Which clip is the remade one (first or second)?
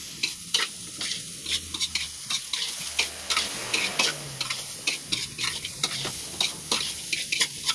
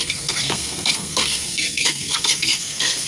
second